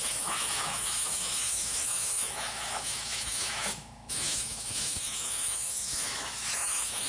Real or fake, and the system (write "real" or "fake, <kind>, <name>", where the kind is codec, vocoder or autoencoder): fake, autoencoder, DAC-VAE